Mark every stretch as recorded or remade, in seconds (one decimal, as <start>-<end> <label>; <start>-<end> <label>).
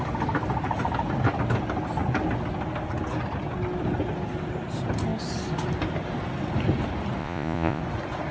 0.0-7.2 recorded; 7.2-7.8 remade; 7.8-8.3 recorded